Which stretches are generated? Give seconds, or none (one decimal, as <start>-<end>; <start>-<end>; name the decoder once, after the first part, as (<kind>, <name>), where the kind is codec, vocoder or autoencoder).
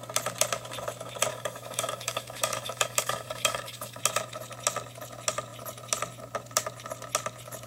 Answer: 1.3-4.0 (codec, DAC)